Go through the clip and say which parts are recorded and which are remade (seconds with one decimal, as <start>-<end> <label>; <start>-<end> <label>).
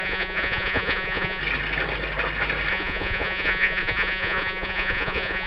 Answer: 0.0-1.4 remade; 1.4-2.7 recorded; 2.7-5.5 remade